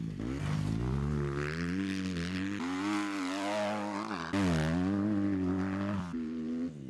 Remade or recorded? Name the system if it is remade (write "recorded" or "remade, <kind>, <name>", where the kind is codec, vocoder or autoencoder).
recorded